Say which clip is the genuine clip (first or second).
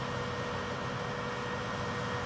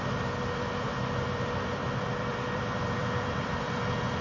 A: first